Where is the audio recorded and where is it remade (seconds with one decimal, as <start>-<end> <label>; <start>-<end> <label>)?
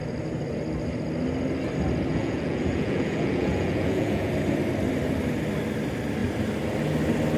0.0-2.1 recorded; 2.1-4.3 remade; 4.3-7.4 recorded